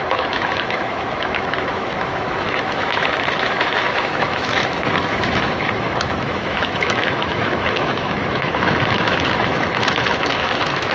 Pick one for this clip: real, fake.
fake